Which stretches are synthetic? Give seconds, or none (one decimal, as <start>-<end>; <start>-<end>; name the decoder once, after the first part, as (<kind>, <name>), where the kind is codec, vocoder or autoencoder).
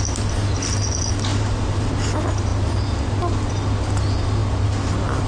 1.3-1.9 (vocoder, BigVGAN v2)